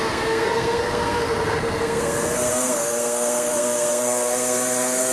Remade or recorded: remade